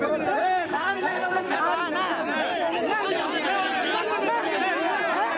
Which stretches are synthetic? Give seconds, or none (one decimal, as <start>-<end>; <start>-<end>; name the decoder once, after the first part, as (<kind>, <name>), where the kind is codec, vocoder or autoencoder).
0.4-1.6 (codec, SNAC)